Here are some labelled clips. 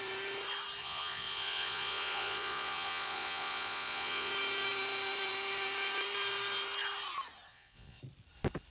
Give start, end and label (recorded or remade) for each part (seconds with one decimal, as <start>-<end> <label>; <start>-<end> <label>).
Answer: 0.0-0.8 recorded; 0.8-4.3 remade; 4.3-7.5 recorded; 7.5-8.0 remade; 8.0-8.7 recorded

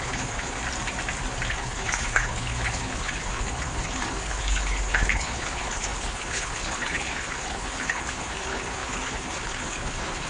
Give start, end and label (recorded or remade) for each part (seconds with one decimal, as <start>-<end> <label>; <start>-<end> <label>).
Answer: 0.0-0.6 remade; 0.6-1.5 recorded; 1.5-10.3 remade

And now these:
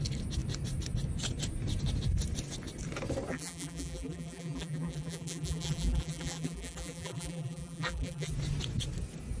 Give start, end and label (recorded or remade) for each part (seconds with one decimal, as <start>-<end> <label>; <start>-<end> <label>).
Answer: 0.0-3.3 recorded; 3.3-8.3 remade; 8.3-9.4 recorded

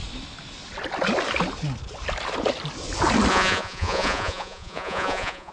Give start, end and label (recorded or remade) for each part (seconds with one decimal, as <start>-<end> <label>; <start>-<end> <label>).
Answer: 0.0-3.3 recorded; 3.3-5.5 remade

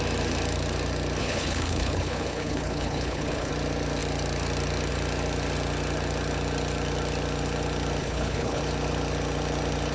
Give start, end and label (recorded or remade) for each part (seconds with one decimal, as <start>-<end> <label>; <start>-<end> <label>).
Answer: 0.0-1.2 recorded; 1.2-3.5 remade; 3.5-8.0 recorded; 8.0-8.6 remade; 8.6-9.9 recorded